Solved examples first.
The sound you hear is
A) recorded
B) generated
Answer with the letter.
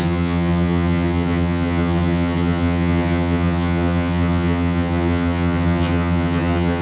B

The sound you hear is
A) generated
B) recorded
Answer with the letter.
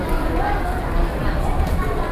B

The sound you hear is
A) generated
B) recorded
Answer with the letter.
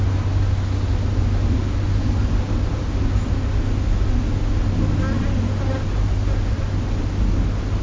B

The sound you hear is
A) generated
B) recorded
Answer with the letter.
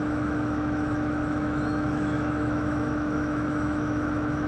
A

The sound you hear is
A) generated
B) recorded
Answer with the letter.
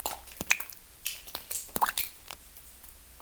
B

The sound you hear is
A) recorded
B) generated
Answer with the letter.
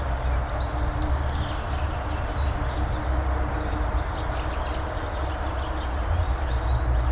A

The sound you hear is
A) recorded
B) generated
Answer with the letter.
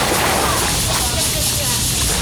A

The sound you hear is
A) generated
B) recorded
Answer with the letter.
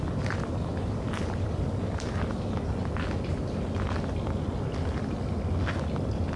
B